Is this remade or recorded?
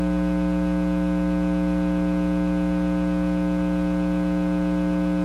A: recorded